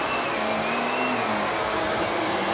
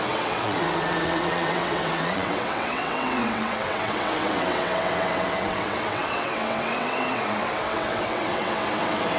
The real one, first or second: first